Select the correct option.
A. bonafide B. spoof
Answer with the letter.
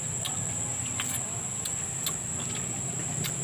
A